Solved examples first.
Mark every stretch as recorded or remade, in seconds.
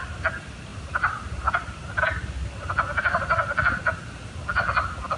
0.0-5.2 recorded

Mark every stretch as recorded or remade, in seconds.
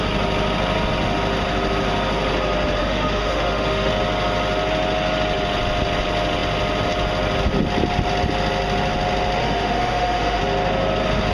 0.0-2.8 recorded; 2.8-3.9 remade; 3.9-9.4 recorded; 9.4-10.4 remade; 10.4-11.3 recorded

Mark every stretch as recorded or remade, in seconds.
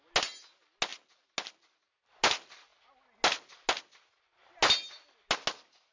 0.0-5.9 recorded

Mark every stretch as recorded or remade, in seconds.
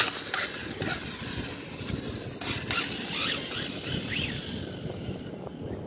0.0-5.9 recorded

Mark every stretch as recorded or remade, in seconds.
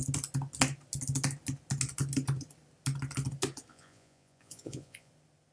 0.0-3.7 recorded; 3.7-5.1 remade; 5.1-5.5 recorded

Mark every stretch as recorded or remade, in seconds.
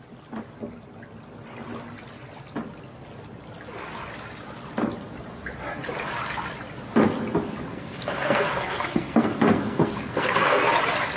0.0-7.7 recorded; 7.7-10.7 remade; 10.7-11.2 recorded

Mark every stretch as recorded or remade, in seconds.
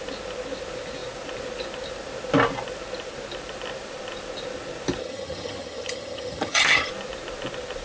0.0-5.0 recorded; 5.0-6.9 remade; 6.9-7.8 recorded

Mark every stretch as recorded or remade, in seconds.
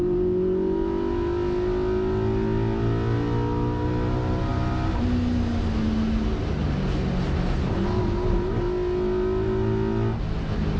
0.0-10.8 recorded